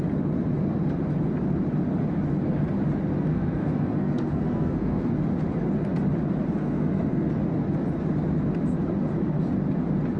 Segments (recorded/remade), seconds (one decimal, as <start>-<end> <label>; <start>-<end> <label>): 0.0-3.3 recorded; 3.3-5.1 remade; 5.1-6.6 recorded; 6.6-7.3 remade; 7.3-10.2 recorded